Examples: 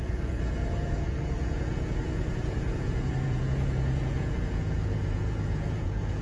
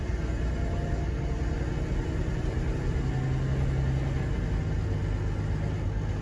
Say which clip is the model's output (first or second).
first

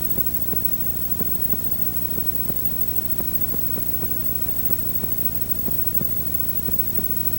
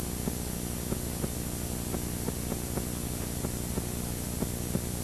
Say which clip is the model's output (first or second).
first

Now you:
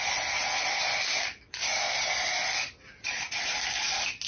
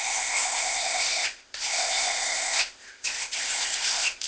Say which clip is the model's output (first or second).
second